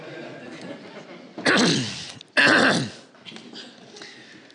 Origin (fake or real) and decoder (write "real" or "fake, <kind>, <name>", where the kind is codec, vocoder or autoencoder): real